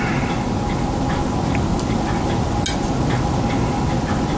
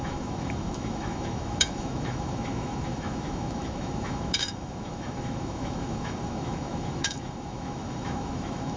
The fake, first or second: second